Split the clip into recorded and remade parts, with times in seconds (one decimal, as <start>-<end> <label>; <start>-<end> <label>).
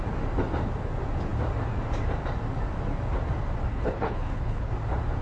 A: 0.0-3.7 recorded; 3.7-4.7 remade; 4.7-5.2 recorded